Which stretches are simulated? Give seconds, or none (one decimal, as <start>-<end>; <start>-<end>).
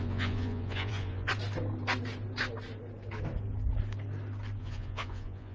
0.0-1.3; 4.6-5.5